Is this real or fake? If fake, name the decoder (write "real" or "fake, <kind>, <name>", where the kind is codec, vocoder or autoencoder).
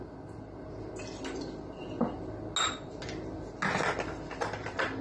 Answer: real